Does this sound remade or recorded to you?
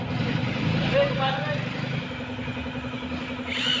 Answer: recorded